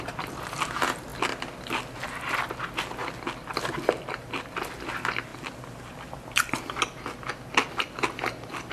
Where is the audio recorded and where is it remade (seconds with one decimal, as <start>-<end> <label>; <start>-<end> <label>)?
0.0-8.7 recorded